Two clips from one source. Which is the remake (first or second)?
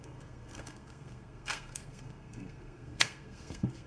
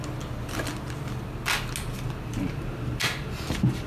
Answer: first